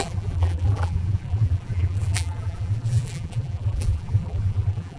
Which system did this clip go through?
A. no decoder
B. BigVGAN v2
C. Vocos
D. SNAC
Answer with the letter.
B